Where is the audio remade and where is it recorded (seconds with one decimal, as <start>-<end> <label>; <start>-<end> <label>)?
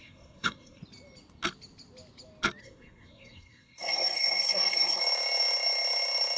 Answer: 0.0-0.8 remade; 0.8-2.6 recorded; 2.6-5.0 remade; 5.0-6.4 recorded